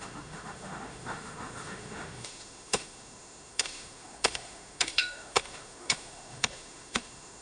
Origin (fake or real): fake